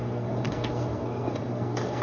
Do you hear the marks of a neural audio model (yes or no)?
yes